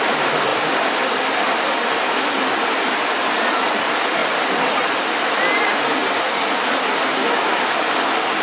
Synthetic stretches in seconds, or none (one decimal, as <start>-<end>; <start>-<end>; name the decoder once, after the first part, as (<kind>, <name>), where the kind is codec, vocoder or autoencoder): 0.5-1.1 (vocoder, BigVGAN v2); 4.2-5.3; 6.0-6.9